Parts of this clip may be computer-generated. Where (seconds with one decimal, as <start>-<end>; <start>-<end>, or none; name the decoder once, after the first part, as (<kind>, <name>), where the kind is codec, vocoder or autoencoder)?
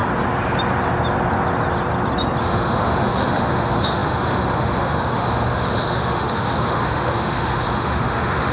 2.4-8.5 (autoencoder, DAC-VAE)